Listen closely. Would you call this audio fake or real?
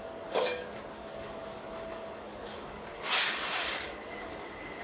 fake